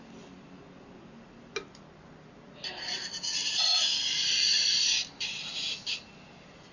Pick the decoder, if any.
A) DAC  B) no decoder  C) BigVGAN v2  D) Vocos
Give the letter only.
B